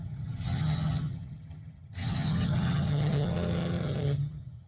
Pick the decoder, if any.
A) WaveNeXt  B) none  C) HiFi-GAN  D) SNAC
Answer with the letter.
C